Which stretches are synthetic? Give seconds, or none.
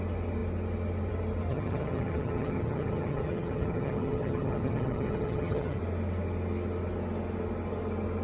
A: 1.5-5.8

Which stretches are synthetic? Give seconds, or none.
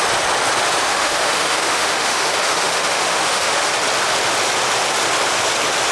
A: 0.9-3.7